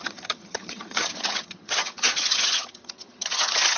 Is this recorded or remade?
remade